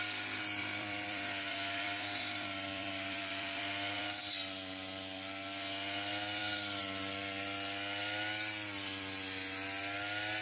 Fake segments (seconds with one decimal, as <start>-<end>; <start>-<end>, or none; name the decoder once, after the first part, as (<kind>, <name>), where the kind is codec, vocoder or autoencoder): 0.6-4.2 (vocoder, BigVGAN v2); 6.1-6.8